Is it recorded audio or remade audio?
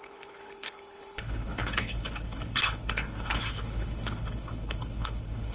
remade